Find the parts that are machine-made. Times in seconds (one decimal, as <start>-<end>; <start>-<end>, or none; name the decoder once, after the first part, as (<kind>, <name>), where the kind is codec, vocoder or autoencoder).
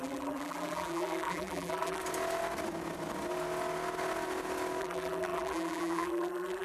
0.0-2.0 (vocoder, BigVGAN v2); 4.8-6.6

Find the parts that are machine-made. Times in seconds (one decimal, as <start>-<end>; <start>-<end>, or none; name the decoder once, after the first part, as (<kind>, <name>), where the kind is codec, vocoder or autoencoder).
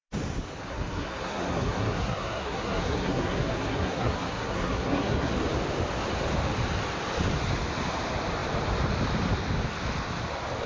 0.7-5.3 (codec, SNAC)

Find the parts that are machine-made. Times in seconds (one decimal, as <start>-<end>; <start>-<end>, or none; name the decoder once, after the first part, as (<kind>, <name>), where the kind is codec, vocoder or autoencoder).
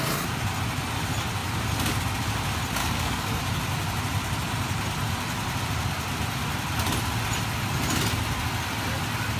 2.8-3.4 (codec, DAC)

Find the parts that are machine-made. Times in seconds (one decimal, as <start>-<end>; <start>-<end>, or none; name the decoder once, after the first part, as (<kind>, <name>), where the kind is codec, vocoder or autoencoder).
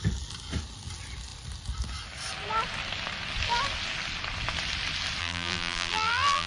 5.2-6.5 (vocoder, BigVGAN v2)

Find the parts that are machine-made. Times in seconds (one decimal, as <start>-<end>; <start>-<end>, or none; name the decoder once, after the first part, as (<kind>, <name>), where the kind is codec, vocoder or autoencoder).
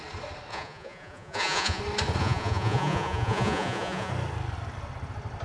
0.5-1.8 (vocoder, Vocos); 2.2-4.1